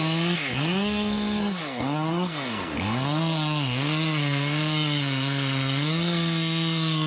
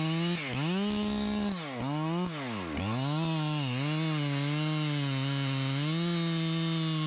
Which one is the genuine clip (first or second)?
second